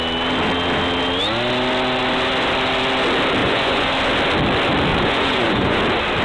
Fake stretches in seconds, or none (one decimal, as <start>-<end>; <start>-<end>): 3.4-3.9; 4.9-5.8